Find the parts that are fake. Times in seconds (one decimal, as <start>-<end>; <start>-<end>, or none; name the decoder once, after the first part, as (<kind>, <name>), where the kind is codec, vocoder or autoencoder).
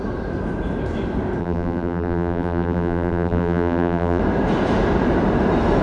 1.4-4.2 (vocoder, BigVGAN v2)